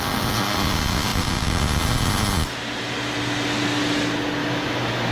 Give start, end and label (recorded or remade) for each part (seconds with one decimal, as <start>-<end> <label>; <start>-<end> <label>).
0.0-4.4 recorded; 4.4-5.1 remade